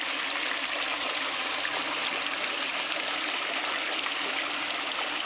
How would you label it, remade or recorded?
recorded